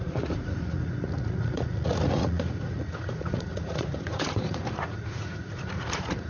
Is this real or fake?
fake